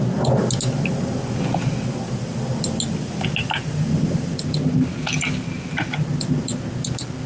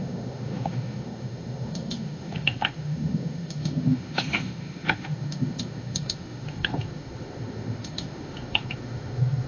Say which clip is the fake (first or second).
second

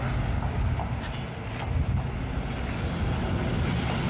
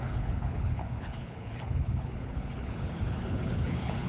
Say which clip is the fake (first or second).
second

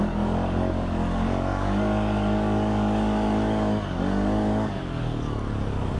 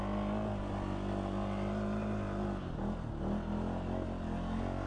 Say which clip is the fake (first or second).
first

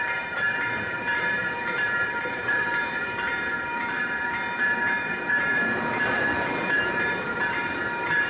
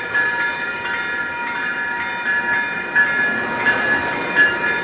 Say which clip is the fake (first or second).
first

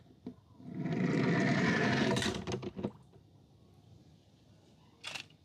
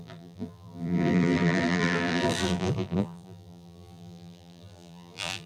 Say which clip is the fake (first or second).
second